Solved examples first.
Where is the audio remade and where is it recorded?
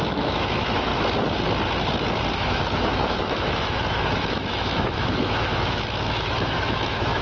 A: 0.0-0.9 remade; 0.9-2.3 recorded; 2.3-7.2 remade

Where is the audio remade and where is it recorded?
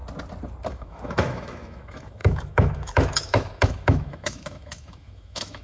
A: 0.0-0.7 recorded; 0.7-5.6 remade